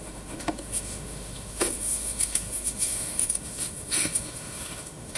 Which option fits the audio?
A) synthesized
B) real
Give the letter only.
A